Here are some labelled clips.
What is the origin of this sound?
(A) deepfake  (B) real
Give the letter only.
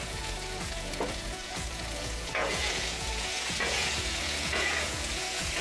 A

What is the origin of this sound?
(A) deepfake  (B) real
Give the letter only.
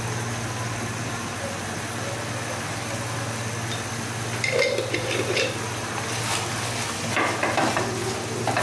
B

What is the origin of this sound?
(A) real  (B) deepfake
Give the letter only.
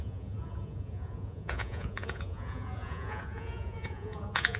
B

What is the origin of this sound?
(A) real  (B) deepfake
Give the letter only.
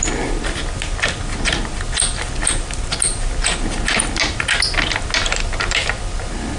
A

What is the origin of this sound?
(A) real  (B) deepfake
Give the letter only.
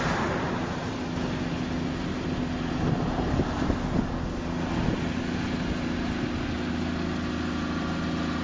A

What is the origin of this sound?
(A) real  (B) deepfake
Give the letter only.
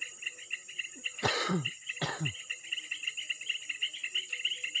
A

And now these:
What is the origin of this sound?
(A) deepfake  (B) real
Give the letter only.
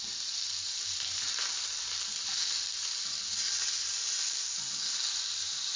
B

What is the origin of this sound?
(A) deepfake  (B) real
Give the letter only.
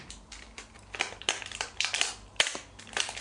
B